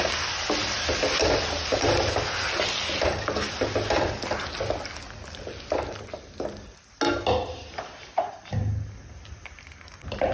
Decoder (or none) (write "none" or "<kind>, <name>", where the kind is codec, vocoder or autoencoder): none